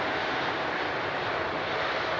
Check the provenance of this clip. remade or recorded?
recorded